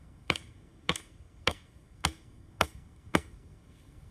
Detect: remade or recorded remade